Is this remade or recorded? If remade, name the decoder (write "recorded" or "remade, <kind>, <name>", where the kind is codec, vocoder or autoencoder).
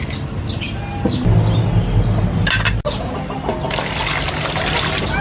recorded